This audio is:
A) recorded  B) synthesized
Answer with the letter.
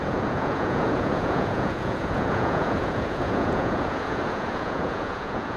B